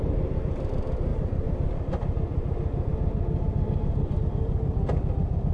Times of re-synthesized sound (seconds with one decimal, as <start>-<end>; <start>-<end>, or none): none